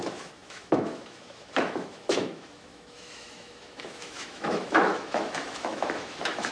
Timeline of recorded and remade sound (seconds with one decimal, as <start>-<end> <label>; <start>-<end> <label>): 0.0-6.5 remade